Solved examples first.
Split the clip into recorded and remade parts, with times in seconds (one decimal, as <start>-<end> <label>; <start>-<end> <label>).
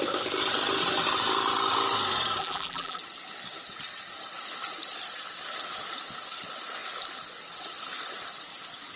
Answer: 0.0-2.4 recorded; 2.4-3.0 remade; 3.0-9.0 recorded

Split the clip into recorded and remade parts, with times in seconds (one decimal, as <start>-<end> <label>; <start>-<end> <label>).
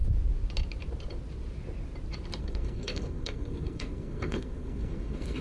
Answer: 0.0-2.4 recorded; 2.4-5.4 remade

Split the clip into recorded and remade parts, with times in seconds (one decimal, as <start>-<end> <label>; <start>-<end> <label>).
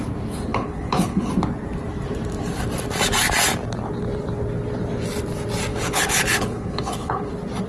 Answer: 0.0-0.5 recorded; 0.5-1.3 remade; 1.3-5.7 recorded; 5.7-7.3 remade; 7.3-7.7 recorded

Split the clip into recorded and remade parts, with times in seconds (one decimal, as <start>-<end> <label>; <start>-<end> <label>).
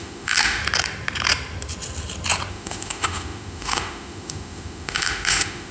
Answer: 0.0-0.6 remade; 0.6-2.5 recorded; 2.5-5.7 remade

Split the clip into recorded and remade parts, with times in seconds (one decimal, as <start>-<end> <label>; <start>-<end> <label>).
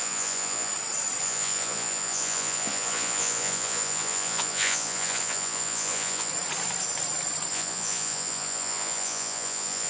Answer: 0.0-0.7 remade; 0.7-1.2 recorded; 1.2-6.3 remade; 6.3-7.5 recorded; 7.5-9.9 remade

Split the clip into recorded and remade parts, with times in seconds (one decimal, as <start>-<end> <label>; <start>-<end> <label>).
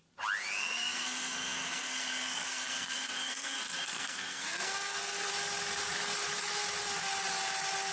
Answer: 0.0-0.6 recorded; 0.6-5.3 remade; 5.3-7.9 recorded